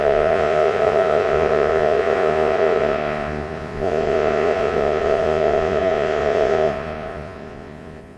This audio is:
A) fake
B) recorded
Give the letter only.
A